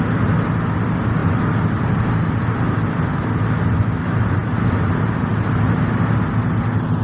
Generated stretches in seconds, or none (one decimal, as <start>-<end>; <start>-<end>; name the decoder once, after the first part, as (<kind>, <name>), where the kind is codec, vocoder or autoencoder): none